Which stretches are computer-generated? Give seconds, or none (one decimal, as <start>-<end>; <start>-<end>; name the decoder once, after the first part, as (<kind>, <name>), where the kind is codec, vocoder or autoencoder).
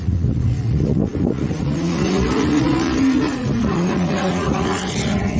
0.0-5.4 (vocoder, Vocos)